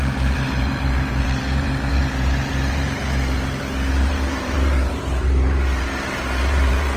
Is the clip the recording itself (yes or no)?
no